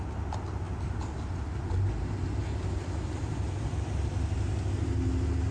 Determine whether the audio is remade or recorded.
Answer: recorded